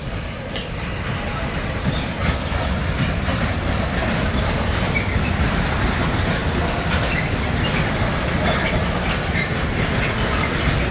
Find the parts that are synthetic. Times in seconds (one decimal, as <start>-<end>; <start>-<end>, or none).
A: 0.0-2.5; 3.3-5.6